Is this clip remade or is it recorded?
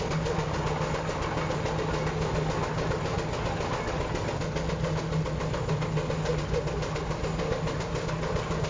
recorded